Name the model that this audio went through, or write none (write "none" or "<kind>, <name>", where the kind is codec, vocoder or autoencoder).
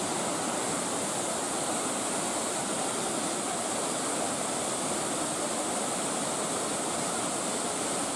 none